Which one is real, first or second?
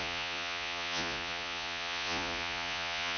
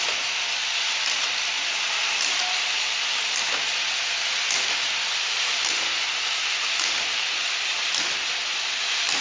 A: second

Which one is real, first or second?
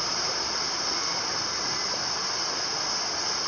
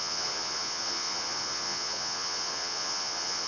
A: first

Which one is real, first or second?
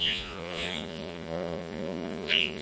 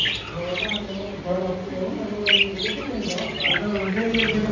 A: second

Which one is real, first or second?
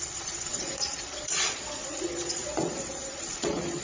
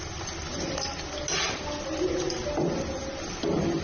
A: second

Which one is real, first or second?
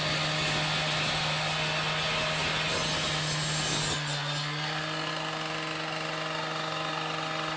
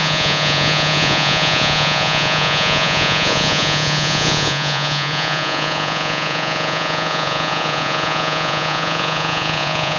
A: first